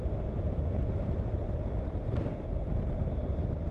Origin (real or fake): real